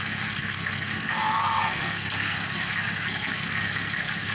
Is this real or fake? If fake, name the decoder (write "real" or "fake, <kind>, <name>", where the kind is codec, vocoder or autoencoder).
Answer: fake, codec, SNAC